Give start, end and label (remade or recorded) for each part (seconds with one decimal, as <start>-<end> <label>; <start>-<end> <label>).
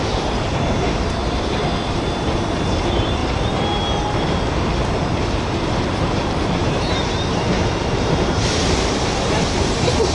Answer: 0.0-1.6 remade; 1.6-2.2 recorded; 2.2-3.2 remade; 3.2-5.8 recorded; 5.8-10.1 remade